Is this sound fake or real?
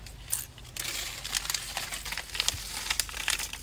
real